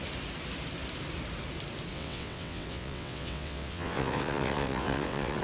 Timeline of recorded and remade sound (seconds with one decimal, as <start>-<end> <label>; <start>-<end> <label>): 0.0-1.9 recorded; 1.9-5.4 remade